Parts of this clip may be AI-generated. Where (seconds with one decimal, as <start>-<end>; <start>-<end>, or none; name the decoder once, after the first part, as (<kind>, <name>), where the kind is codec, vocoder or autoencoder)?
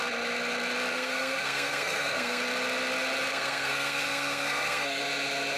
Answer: 0.9-2.4 (codec, SNAC); 3.3-5.0